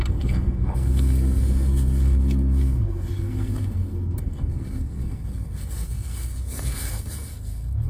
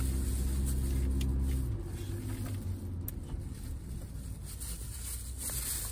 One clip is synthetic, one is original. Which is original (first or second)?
second